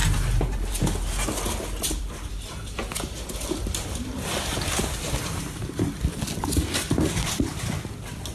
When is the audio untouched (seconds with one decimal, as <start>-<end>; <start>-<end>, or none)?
2.3-2.8; 5.6-6.1; 7.7-8.3